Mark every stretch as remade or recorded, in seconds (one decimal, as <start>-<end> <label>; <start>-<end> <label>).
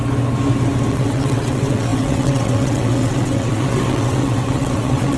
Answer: 0.0-0.9 recorded; 0.9-5.2 remade